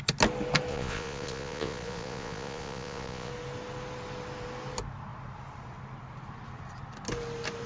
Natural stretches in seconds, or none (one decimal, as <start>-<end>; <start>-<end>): 0.0-0.7; 3.3-7.7